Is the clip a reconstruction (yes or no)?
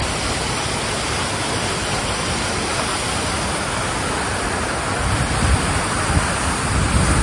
no